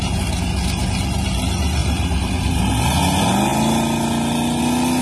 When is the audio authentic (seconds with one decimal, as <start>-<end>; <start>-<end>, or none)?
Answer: 0.0-1.8; 2.6-5.0